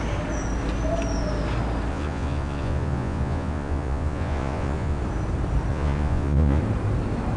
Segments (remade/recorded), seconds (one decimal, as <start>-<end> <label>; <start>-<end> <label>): 0.0-1.9 recorded; 1.9-5.0 remade; 5.0-5.7 recorded; 5.7-6.6 remade; 6.6-7.4 recorded